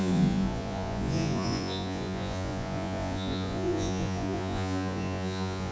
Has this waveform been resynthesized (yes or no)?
yes